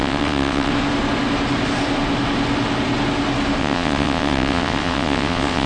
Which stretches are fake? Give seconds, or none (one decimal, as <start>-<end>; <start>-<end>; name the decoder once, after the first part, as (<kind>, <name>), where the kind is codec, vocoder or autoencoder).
0.0-0.7 (vocoder, WaveNeXt); 3.6-5.7